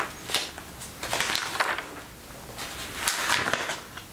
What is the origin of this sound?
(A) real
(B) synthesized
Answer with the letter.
A